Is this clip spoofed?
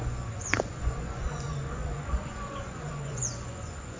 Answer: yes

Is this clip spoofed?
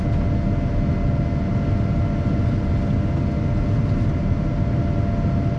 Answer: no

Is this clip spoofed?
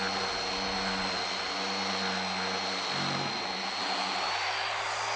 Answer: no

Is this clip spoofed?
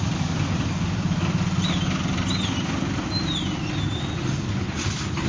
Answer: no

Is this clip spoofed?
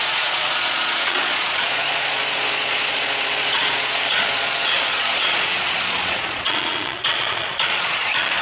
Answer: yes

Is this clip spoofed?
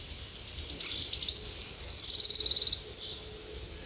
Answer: no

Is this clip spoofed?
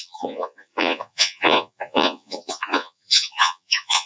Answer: yes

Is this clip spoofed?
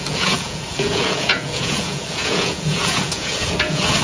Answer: yes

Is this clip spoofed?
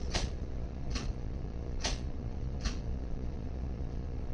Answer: yes